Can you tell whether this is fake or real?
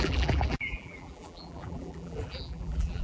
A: fake